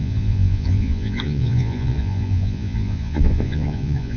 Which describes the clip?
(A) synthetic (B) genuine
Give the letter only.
A